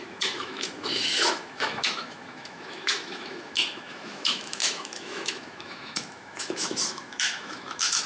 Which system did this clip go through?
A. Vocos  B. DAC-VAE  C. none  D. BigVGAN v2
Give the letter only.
B